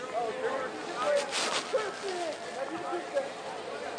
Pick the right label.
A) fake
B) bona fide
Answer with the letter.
B